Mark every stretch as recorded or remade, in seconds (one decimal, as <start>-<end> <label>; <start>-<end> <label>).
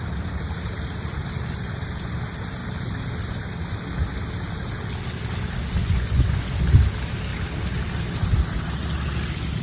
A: 0.0-5.8 recorded; 5.8-6.5 remade; 6.5-9.6 recorded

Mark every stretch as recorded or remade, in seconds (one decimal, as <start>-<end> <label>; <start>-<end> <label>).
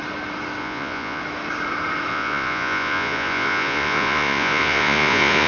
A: 0.0-0.6 recorded; 0.6-1.2 remade; 1.2-2.1 recorded; 2.1-5.5 remade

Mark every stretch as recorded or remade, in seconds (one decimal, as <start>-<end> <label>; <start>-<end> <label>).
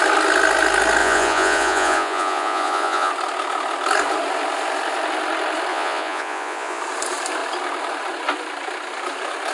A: 0.0-1.0 recorded; 1.0-3.1 remade; 3.1-5.7 recorded; 5.7-6.8 remade; 6.8-9.5 recorded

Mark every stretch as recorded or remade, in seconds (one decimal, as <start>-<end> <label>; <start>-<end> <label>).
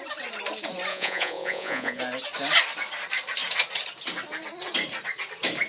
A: 0.0-0.9 recorded; 0.9-2.0 remade; 2.0-5.7 recorded